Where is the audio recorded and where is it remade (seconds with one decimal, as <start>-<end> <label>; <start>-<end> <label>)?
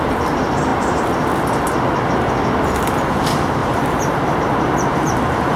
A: 0.0-3.6 recorded; 3.6-5.6 remade